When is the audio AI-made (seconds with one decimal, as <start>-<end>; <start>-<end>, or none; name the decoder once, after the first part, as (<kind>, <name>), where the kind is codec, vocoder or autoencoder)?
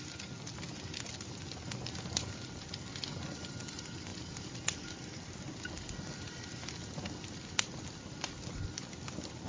none